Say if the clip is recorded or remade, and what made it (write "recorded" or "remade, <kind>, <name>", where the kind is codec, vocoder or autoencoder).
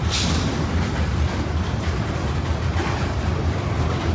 remade, vocoder, BigVGAN v2